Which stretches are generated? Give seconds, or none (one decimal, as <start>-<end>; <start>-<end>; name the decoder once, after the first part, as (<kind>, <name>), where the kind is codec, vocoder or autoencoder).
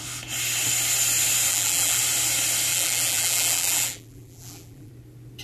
1.5-2.0 (vocoder, BigVGAN v2); 2.7-4.9